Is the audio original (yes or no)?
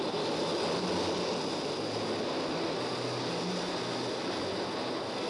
yes